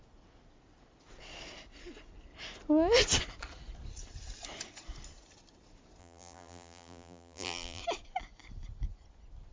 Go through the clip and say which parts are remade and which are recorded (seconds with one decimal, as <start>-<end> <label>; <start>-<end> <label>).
0.0-6.0 recorded; 6.0-7.8 remade; 7.8-9.5 recorded